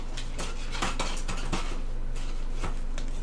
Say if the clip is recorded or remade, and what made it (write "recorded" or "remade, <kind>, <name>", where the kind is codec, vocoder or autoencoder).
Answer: recorded